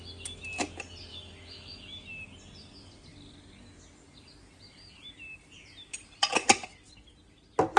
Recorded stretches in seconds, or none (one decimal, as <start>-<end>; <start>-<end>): 0.0-1.1; 1.8-7.8

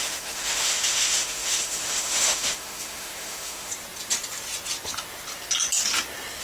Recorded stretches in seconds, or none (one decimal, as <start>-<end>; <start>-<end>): 3.7-6.4

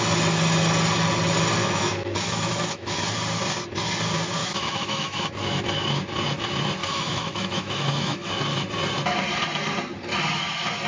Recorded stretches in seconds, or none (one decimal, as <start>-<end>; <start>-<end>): 0.0-1.6; 3.1-4.4; 5.6-6.8; 8.3-10.9

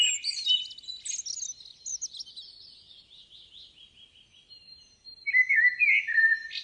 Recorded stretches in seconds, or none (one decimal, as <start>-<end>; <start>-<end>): 0.0-6.6

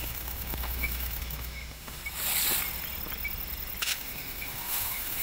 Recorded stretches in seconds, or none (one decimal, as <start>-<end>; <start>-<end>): 2.0-3.8